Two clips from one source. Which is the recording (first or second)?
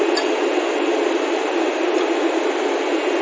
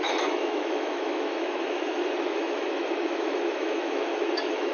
first